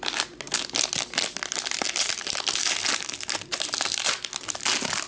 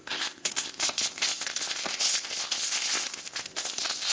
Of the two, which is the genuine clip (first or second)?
first